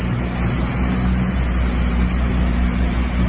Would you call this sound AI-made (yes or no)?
no